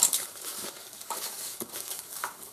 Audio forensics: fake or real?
fake